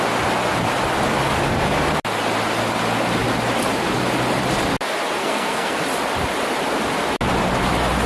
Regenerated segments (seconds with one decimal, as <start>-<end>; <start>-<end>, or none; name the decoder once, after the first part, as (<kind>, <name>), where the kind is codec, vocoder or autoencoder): 5.2-5.8 (codec, SNAC)